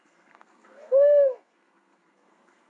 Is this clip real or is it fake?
fake